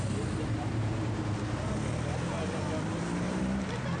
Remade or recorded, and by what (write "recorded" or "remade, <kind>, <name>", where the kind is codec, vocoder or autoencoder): recorded